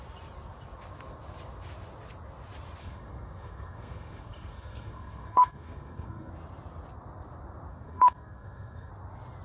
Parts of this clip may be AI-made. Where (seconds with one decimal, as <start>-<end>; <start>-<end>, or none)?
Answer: 2.8-6.3; 7.7-8.9